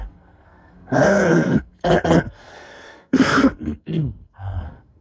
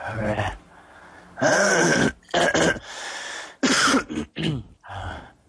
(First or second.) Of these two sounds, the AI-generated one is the first